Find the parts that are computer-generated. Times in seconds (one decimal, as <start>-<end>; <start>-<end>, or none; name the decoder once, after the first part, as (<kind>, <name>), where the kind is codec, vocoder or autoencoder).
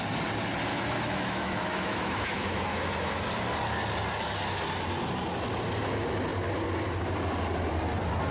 0.7-3.2 (autoencoder, DAC-VAE)